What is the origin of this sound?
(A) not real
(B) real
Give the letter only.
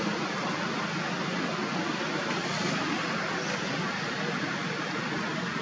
B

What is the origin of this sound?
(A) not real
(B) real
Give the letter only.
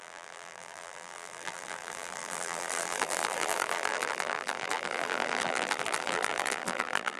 A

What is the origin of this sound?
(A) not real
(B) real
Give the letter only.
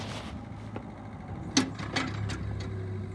B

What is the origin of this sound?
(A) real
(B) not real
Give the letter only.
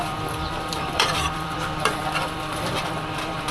B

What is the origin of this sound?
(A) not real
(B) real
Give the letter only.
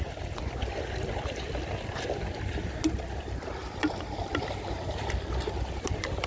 A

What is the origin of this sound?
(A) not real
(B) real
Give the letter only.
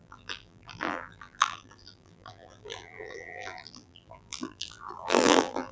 A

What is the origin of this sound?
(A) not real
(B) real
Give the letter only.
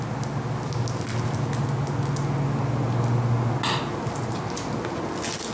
B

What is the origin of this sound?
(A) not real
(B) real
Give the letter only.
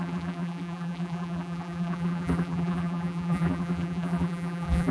A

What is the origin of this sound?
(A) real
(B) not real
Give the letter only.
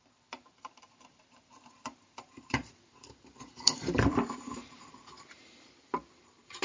B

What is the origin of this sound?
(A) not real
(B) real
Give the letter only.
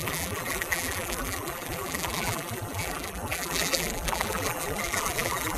A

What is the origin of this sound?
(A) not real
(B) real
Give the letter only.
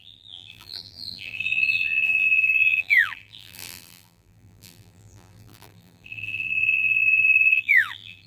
A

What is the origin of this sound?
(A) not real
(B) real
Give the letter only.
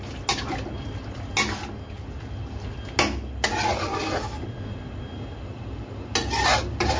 B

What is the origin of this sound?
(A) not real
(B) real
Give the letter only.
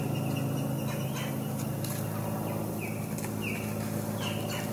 B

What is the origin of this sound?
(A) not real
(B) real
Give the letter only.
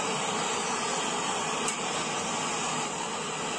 B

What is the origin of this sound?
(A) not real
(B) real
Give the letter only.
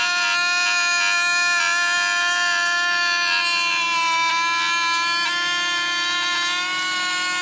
B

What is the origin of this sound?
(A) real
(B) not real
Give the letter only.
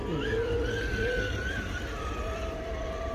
A